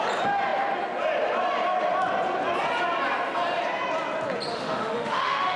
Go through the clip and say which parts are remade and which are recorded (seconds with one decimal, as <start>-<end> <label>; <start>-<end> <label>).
0.0-4.5 recorded; 4.5-5.6 remade